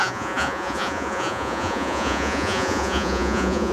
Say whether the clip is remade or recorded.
remade